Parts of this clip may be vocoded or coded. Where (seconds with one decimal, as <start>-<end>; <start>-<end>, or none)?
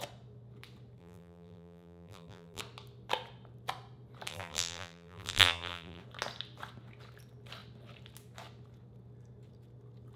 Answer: 1.0-2.6; 4.3-6.0